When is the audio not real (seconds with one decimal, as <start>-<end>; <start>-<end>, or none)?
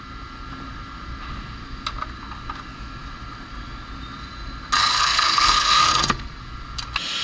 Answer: 4.8-6.4